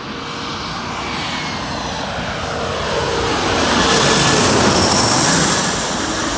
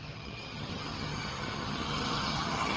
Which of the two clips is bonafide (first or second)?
first